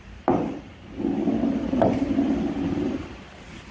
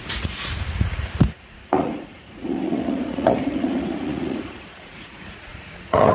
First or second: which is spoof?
second